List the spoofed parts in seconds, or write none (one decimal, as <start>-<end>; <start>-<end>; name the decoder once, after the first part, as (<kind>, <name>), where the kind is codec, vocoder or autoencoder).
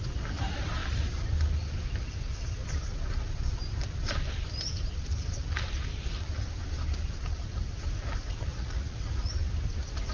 8.5-9.3 (vocoder, Vocos)